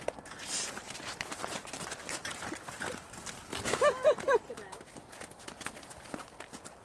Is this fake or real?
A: real